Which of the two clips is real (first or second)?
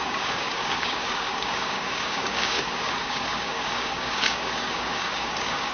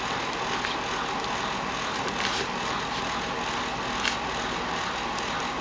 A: second